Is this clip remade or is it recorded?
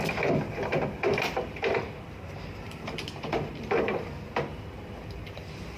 remade